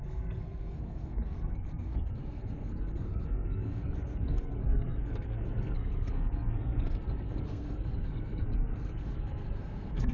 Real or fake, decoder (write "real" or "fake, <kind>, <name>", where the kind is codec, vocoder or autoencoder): fake, codec, SNAC